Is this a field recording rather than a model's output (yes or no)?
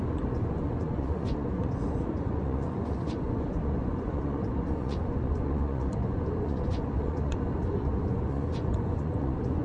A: no